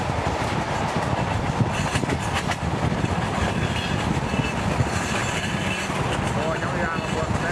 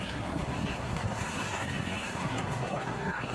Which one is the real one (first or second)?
first